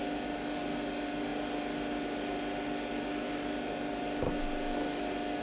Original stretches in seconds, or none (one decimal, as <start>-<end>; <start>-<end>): 0.0-5.4